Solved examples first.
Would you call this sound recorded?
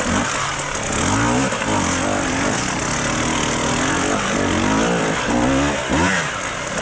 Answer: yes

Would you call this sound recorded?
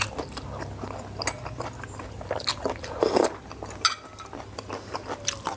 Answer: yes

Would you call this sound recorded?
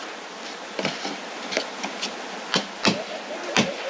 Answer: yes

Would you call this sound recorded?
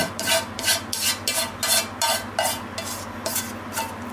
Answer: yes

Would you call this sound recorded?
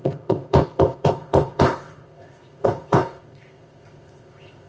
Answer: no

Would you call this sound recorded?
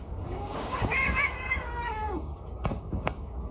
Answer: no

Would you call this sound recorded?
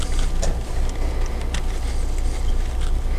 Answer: yes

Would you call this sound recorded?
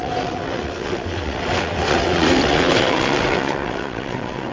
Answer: no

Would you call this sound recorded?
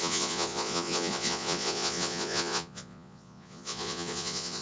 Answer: no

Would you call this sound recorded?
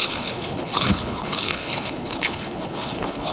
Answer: no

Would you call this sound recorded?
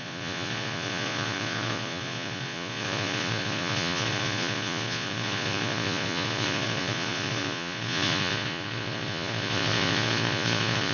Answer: no